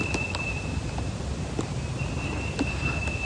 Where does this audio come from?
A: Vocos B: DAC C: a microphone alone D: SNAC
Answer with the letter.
C